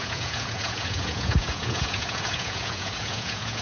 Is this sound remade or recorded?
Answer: remade